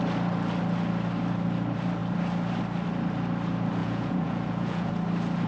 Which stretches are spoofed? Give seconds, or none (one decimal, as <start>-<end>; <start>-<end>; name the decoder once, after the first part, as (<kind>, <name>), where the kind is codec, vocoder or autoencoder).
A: 3.8-4.9 (vocoder, Vocos)

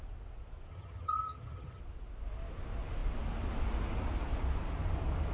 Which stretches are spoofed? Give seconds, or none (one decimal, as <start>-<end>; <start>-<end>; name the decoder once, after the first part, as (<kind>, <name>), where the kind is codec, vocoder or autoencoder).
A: 0.7-1.8 (vocoder, HiFi-GAN)

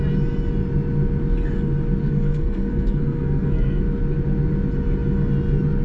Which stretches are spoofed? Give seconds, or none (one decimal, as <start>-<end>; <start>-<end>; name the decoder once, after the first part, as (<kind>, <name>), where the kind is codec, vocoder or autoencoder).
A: 2.0-3.8 (codec, SNAC)

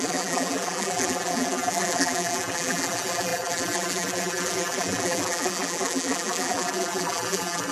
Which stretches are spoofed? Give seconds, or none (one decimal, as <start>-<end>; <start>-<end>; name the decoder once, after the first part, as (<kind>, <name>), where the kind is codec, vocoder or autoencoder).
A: 0.0-7.7 (vocoder, BigVGAN v2)